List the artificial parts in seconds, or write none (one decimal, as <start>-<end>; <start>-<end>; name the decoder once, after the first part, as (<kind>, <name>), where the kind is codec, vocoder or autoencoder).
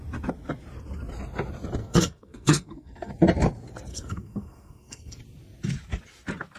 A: 1.8-3.1 (codec, SNAC); 3.9-5.2